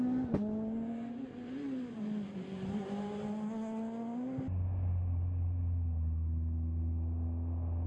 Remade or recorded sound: recorded